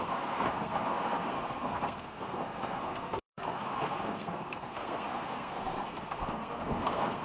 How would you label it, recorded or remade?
remade